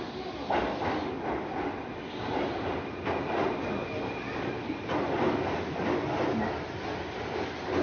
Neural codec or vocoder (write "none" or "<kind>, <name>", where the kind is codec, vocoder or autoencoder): none